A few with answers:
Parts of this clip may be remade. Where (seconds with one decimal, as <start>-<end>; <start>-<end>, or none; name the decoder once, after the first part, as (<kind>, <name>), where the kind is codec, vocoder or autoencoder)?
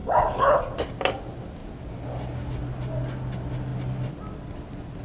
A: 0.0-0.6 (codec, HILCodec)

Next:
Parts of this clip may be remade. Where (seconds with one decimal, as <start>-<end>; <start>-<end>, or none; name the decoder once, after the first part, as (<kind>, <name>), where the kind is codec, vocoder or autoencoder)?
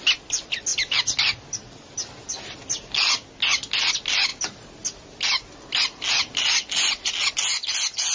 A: none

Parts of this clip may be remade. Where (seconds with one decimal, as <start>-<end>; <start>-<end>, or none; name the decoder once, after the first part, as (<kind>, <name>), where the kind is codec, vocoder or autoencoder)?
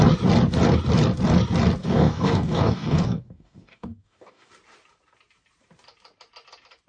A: 1.8-4.5 (codec, DAC)